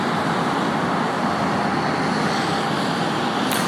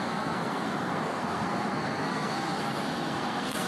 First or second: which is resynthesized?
second